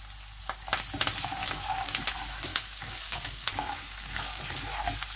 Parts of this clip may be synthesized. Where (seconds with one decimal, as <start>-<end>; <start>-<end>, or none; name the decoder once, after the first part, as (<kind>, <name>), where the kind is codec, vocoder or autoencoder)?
1.4-1.9 (codec, DAC); 2.5-4.4